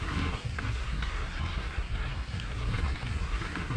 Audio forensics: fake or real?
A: fake